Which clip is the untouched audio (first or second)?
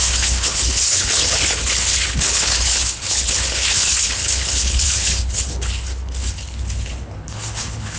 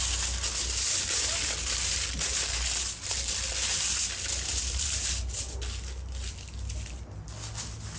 second